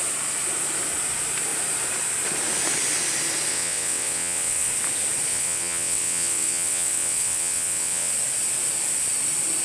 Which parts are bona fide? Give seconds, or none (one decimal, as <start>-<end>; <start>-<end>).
0.0-3.5; 4.7-5.3; 8.1-9.6